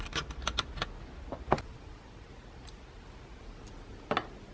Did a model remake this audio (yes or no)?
no